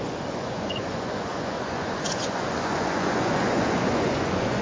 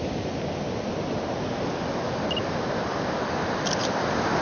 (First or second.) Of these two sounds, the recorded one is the second